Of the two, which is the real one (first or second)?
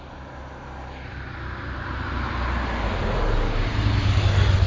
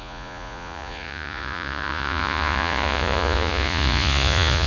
first